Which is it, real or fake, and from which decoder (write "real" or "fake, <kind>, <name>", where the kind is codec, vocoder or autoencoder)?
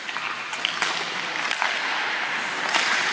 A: real